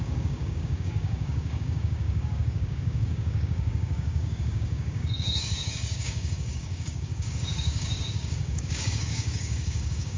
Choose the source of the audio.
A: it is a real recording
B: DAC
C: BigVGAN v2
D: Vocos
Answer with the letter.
B